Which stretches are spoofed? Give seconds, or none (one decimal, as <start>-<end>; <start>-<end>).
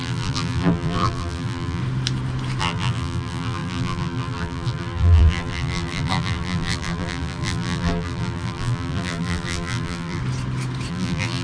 0.0-1.8; 2.6-10.2; 10.9-11.4